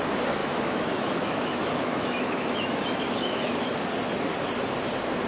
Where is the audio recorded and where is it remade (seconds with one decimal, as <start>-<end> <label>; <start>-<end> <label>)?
0.0-0.4 recorded; 0.4-3.6 remade; 3.6-5.3 recorded